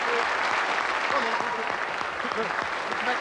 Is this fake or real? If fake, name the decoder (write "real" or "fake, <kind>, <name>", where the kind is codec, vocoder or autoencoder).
real